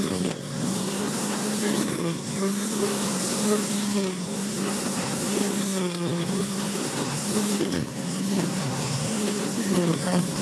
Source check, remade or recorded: remade